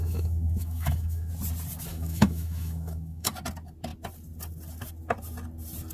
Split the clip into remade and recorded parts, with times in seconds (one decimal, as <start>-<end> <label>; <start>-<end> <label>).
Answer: 0.0-1.3 remade; 1.3-1.9 recorded; 1.9-3.3 remade; 3.3-5.9 recorded